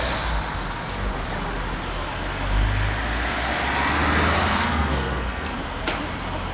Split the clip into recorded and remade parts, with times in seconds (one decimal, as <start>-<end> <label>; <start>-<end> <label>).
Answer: 0.0-4.5 recorded; 4.5-5.6 remade; 5.6-6.5 recorded